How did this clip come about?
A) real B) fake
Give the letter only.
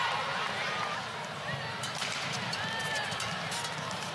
A